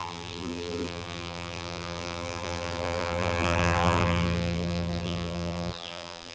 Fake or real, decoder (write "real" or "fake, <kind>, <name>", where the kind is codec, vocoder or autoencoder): fake, vocoder, BigVGAN v2